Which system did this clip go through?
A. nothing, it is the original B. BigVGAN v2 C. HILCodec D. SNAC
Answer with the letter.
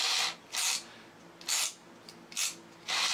A